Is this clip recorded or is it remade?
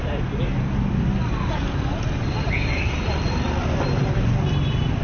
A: recorded